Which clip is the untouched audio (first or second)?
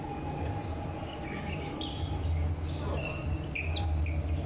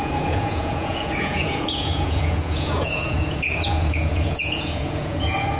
first